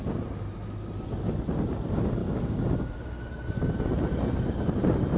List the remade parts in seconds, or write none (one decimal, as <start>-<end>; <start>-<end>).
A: none